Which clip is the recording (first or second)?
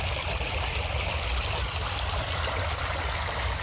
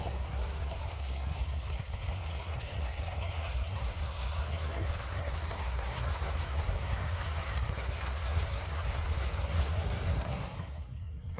first